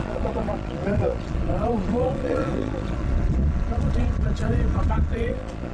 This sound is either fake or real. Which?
fake